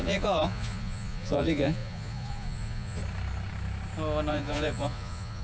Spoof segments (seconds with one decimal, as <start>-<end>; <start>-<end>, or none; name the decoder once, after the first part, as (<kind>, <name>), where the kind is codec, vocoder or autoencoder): 0.0-3.0 (vocoder, Vocos); 4.3-5.4